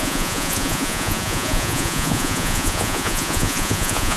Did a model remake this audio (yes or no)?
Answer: yes